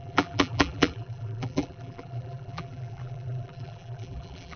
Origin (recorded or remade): remade